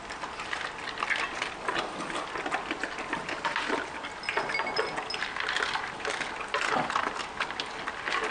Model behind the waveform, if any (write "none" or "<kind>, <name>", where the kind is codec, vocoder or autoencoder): none